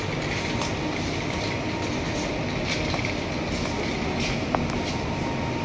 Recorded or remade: recorded